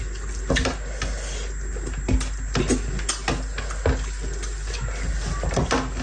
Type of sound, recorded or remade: recorded